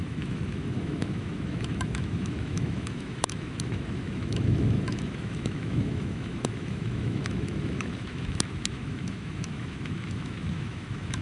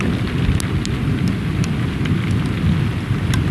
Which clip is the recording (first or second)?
second